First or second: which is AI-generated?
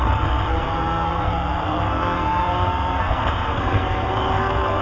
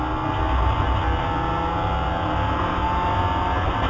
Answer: first